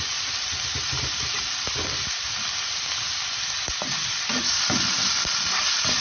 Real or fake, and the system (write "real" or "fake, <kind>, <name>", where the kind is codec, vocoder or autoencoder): real